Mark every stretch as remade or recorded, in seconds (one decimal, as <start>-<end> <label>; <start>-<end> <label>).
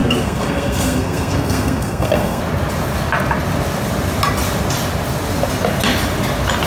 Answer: 0.0-2.4 remade; 2.4-6.7 recorded